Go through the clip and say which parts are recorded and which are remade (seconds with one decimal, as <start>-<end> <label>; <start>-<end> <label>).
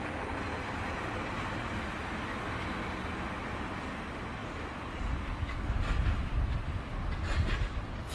0.0-8.1 recorded